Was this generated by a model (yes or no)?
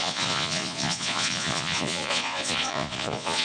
yes